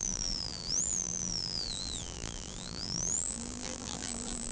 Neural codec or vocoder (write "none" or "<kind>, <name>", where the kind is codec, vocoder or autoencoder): vocoder, BigVGAN v2